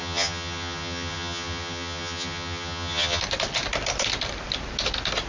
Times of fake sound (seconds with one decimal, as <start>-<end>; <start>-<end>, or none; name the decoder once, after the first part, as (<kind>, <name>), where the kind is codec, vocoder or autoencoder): 0.0-3.2 (vocoder, HiFi-GAN)